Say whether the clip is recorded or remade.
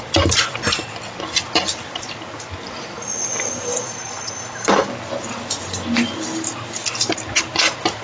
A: recorded